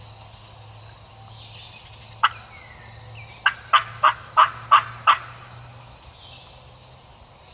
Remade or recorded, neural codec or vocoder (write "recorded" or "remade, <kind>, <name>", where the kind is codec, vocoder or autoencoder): recorded